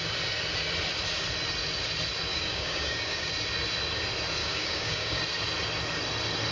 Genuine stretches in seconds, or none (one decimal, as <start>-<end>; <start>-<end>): 0.0-2.3; 3.3-4.4; 5.2-6.5